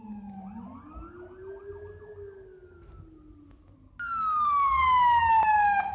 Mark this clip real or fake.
real